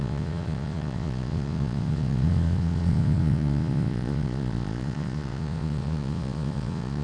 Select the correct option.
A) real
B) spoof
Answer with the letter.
B